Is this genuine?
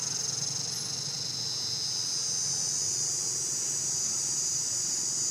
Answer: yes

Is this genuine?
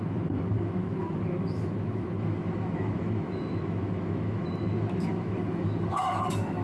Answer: no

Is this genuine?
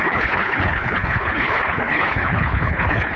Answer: no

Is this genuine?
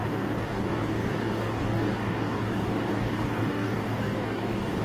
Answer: no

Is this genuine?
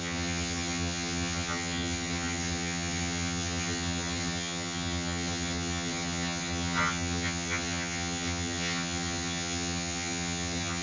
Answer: no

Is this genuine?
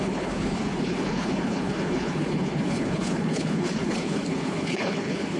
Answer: no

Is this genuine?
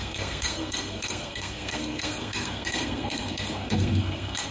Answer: no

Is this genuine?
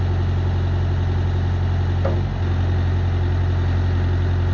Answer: yes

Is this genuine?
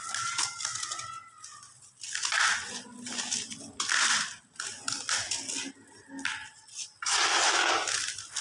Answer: yes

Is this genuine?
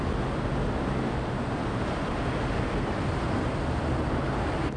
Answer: yes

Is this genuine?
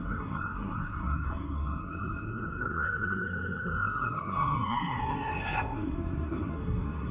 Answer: no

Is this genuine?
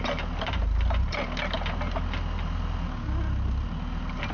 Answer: yes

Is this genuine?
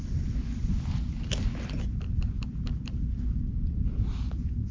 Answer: yes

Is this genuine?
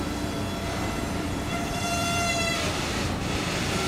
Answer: no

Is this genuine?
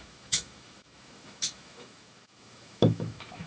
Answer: no